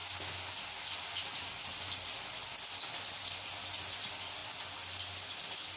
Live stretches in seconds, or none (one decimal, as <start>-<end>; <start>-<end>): 0.0-5.8